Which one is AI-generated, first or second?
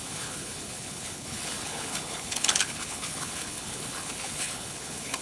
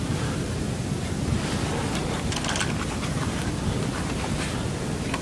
first